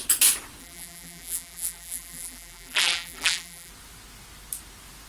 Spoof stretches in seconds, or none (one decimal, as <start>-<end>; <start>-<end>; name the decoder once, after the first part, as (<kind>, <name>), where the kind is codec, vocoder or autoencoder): 0.6-3.7 (vocoder, BigVGAN v2)